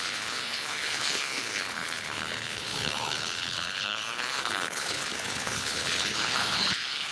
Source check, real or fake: fake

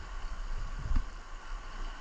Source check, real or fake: real